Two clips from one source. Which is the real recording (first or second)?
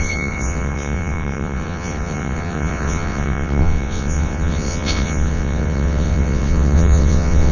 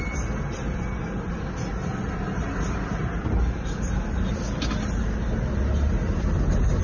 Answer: second